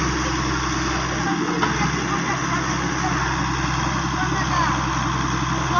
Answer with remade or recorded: recorded